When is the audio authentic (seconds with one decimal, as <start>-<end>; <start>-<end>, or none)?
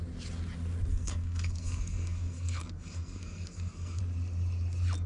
0.0-0.9; 4.0-5.1